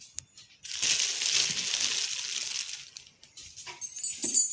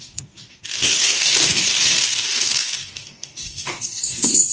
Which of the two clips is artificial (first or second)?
second